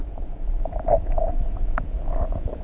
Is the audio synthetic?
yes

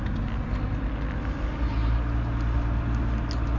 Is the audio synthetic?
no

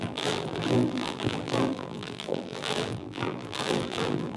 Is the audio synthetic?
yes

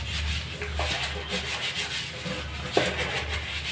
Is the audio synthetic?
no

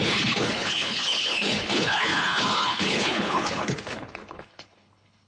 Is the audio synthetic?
yes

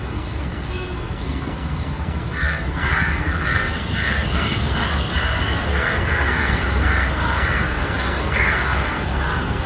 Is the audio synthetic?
yes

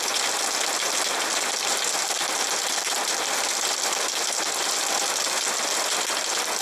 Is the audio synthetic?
no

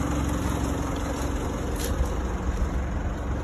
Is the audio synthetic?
no